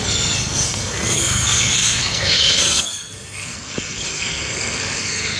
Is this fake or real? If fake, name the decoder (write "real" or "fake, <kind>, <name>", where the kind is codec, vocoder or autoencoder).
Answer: fake, codec, SNAC